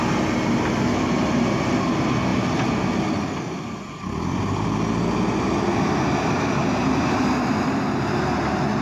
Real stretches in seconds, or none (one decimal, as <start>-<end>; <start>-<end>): 0.0-8.8